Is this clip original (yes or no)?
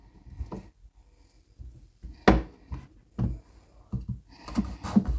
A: yes